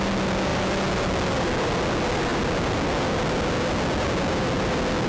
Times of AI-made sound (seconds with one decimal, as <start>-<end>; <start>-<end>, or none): none